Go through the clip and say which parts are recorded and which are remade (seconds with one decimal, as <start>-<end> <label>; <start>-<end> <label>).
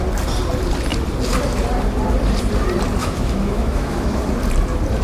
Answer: 0.0-3.0 recorded; 3.0-4.2 remade; 4.2-5.0 recorded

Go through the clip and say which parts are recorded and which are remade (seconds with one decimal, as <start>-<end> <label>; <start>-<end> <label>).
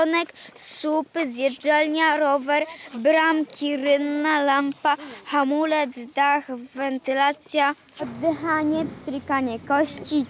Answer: 0.0-10.3 recorded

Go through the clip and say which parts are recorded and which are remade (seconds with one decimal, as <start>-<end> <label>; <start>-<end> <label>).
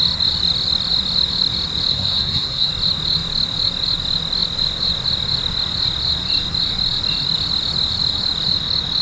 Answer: 0.0-1.9 recorded; 1.9-2.7 remade; 2.7-9.0 recorded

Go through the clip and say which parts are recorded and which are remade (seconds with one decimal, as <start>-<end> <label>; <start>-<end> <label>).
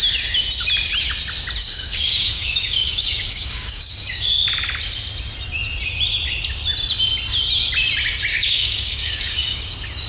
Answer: 0.0-1.6 recorded; 1.6-4.3 remade; 4.3-8.3 recorded; 8.3-9.6 remade; 9.6-10.1 recorded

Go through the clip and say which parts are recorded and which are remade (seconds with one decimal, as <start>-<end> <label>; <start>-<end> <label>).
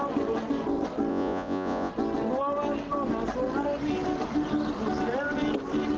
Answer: 0.0-1.1 recorded; 1.1-1.9 remade; 1.9-6.0 recorded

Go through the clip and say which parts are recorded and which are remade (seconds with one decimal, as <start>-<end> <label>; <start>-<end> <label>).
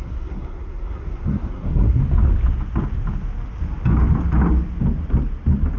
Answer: 0.0-2.0 remade; 2.0-5.8 recorded